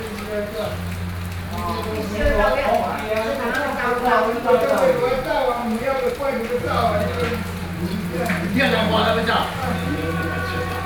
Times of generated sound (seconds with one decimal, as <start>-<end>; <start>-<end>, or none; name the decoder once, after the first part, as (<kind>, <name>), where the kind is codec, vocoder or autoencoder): none